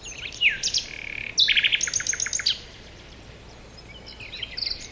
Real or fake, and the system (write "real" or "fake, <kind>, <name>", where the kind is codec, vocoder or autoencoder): real